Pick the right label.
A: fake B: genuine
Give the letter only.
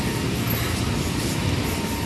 B